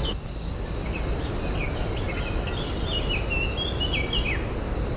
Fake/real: real